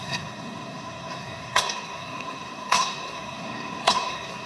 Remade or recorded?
remade